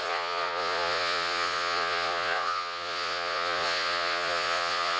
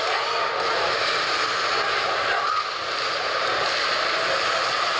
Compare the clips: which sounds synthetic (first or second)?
first